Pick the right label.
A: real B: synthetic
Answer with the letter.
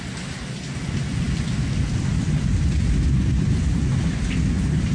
A